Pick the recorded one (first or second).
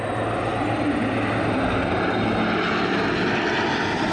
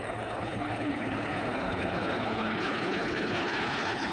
first